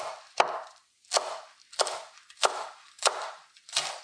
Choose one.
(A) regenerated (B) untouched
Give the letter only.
B